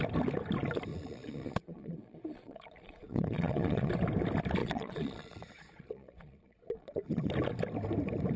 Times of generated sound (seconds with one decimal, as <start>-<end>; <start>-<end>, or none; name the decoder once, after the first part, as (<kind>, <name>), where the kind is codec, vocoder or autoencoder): 0.9-3.9 (vocoder, Vocos); 4.6-7.3